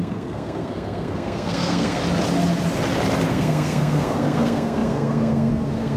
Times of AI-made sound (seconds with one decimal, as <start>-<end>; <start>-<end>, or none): 0.0-2.0; 3.3-6.0